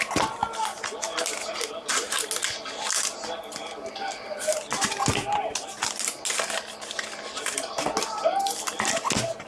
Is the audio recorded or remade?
recorded